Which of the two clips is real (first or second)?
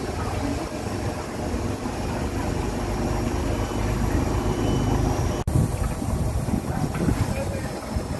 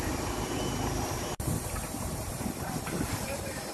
first